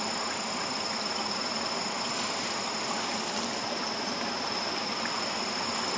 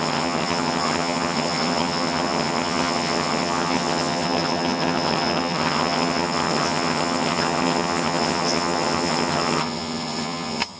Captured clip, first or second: first